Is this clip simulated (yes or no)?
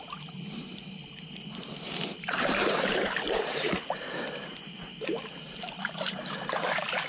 yes